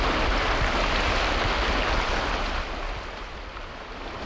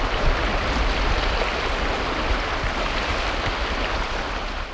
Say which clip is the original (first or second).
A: first